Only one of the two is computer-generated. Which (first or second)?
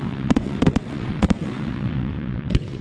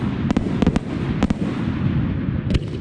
first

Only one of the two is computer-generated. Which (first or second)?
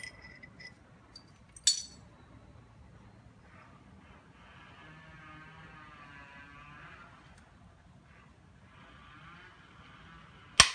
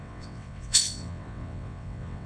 second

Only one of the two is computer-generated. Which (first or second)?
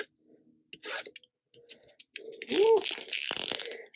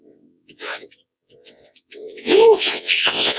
second